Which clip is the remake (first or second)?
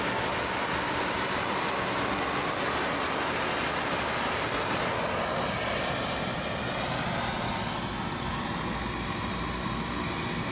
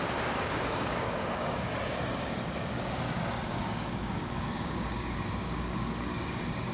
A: second